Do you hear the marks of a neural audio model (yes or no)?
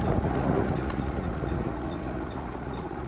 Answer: yes